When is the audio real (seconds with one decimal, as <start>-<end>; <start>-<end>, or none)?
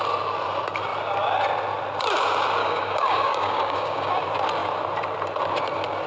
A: 0.0-2.6; 4.1-6.1